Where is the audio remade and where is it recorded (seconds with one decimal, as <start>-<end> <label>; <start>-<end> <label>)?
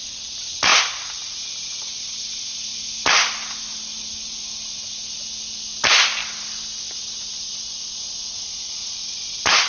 0.0-9.7 recorded